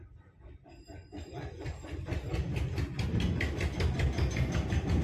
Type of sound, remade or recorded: recorded